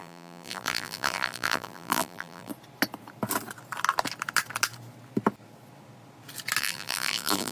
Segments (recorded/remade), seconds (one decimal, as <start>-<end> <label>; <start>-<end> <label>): 0.0-2.5 remade; 2.5-6.6 recorded; 6.6-7.5 remade